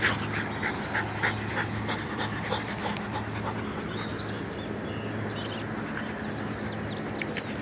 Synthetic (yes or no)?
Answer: no